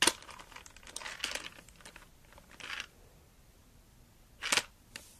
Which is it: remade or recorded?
recorded